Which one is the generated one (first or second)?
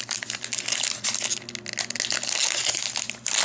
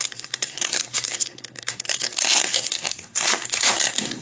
second